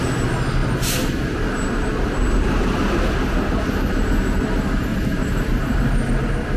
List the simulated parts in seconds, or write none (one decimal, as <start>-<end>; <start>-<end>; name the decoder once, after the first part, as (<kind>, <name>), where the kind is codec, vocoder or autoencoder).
0.6-3.1 (vocoder, BigVGAN v2); 4.9-6.1